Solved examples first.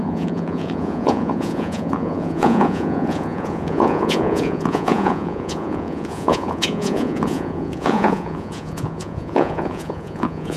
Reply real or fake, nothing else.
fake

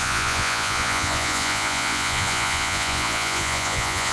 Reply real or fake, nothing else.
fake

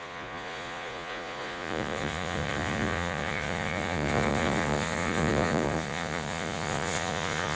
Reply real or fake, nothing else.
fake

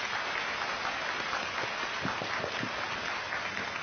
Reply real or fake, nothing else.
real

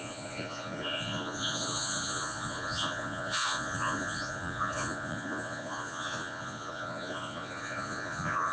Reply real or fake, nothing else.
fake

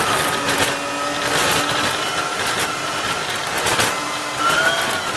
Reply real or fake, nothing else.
real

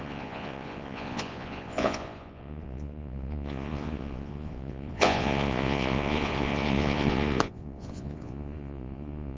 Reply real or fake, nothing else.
fake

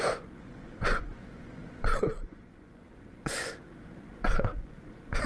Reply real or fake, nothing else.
fake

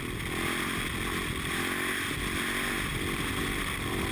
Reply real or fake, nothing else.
real